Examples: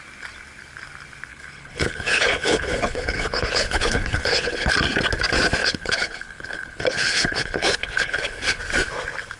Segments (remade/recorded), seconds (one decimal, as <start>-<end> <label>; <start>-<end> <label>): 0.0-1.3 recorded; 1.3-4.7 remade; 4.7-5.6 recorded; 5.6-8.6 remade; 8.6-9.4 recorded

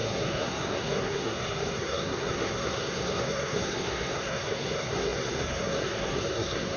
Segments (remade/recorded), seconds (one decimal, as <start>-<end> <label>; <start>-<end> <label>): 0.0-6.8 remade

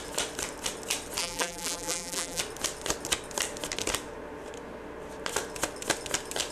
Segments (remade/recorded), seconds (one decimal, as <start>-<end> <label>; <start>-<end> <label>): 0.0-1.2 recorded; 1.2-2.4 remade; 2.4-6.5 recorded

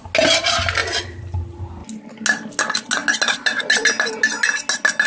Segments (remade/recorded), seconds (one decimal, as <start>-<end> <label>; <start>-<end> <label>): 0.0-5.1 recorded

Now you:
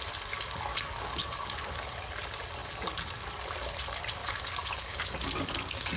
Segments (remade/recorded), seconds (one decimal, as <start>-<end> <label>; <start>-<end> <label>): 0.0-0.7 recorded; 0.7-1.9 remade; 1.9-4.2 recorded; 4.2-6.0 remade

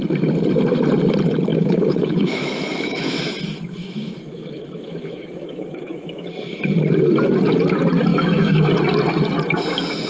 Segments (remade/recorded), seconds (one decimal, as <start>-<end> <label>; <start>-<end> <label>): 0.0-1.5 recorded; 1.5-3.2 remade; 3.2-3.8 recorded; 3.8-6.3 remade; 6.3-8.1 recorded; 8.1-8.7 remade; 8.7-10.1 recorded

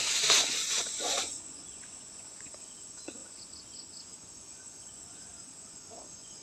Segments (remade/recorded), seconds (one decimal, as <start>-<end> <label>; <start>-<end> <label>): 0.0-6.4 remade